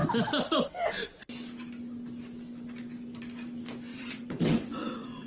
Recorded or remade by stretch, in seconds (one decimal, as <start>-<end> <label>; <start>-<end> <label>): 0.0-3.9 recorded; 3.9-5.3 remade